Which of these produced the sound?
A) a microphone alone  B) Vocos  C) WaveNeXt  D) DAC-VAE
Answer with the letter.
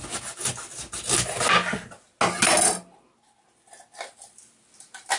A